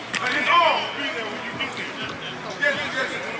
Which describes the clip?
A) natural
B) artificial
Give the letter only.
A